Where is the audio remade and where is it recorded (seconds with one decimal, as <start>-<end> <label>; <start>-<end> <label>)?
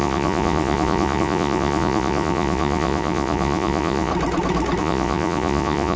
0.0-4.1 remade; 4.1-4.8 recorded; 4.8-6.0 remade